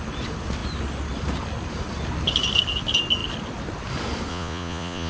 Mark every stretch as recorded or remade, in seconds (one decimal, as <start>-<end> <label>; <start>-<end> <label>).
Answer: 0.0-4.3 recorded; 4.3-5.1 remade